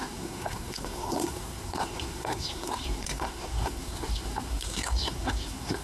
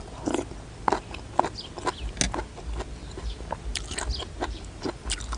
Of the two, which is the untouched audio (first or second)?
second